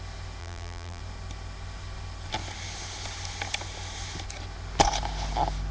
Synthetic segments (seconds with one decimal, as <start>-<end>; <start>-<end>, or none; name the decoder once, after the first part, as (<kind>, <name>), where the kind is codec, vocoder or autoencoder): 0.4-1.0 (vocoder, BigVGAN v2)